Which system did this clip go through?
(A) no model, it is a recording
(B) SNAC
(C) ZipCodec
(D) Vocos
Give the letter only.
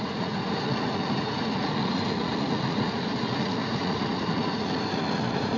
D